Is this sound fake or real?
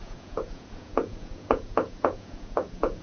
fake